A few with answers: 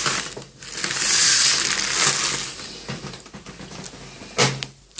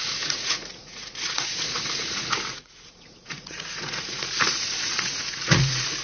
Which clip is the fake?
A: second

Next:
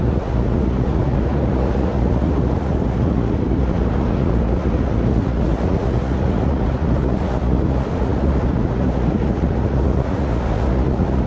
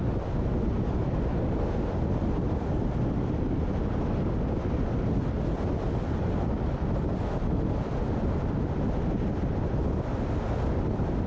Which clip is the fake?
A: first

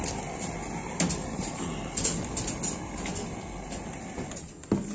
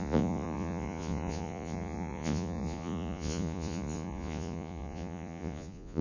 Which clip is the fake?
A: second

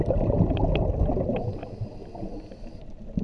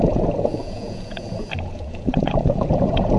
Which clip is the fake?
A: second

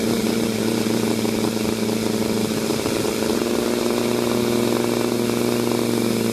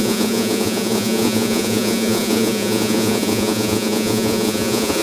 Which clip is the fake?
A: second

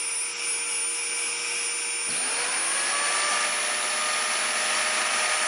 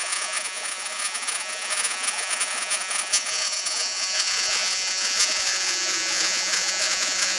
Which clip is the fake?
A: second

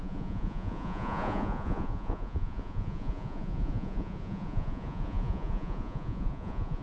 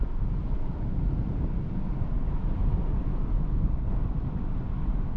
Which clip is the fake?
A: first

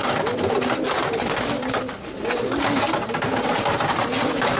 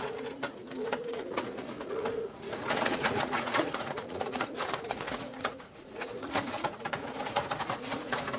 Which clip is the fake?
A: second